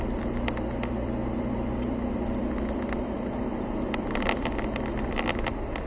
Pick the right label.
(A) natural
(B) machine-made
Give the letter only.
B